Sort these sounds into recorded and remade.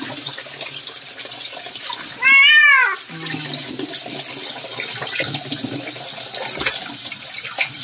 recorded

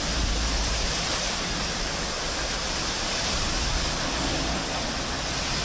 recorded